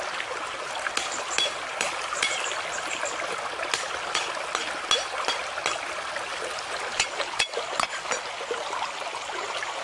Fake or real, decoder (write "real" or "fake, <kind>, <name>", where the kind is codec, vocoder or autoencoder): real